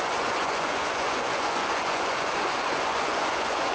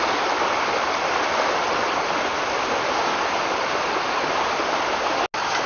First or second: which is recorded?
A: second